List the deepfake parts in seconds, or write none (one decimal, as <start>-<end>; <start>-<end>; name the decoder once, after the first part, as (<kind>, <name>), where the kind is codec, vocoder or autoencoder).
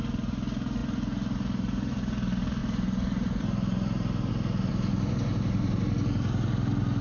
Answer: 0.8-2.0 (vocoder, BigVGAN v2); 2.6-4.3; 4.7-5.8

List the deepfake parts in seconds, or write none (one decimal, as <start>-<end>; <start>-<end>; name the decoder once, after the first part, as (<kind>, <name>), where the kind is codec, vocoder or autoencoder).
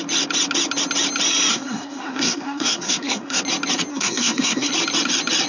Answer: 1.5-3.4 (codec, SNAC); 3.9-4.7